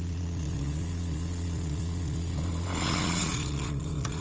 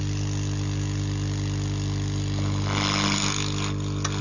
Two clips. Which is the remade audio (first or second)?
first